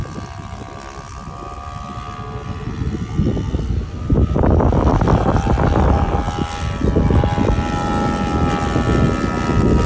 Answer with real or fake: real